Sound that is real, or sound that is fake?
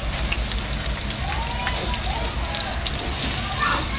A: real